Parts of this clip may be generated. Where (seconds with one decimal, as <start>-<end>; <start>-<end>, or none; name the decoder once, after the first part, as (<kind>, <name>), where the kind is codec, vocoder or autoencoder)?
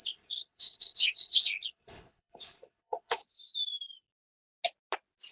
0.0-3.2 (codec, HILCodec)